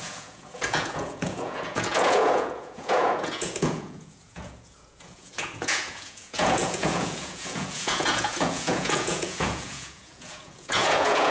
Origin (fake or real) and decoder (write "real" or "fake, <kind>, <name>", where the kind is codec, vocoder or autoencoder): fake, vocoder, Vocos